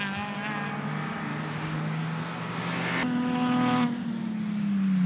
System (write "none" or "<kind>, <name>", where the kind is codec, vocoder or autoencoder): none